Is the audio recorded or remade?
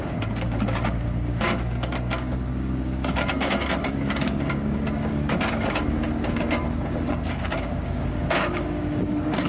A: remade